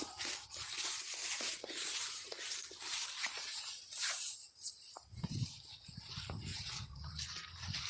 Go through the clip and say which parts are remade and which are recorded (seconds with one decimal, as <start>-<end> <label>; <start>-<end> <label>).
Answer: 0.0-1.2 recorded; 1.2-4.9 remade; 4.9-6.5 recorded; 6.5-7.1 remade; 7.1-7.9 recorded